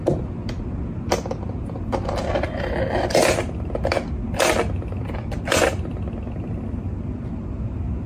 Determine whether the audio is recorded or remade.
recorded